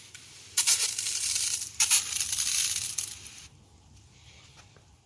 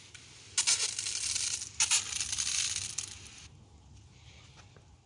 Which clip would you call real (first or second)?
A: second